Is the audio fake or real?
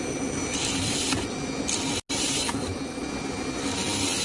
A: real